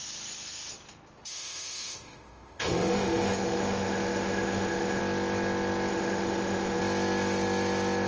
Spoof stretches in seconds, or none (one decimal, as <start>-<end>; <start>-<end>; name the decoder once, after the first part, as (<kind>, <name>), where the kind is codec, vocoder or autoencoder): 1.3-5.0 (autoencoder, DAC-VAE); 5.9-6.8